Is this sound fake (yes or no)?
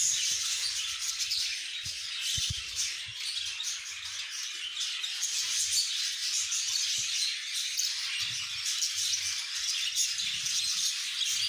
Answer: no